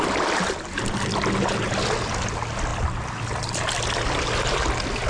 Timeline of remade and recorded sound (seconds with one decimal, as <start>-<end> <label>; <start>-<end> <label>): 0.0-2.7 recorded; 2.7-3.7 remade; 3.7-5.1 recorded